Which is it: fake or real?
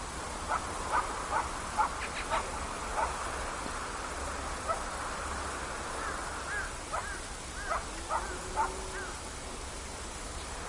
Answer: real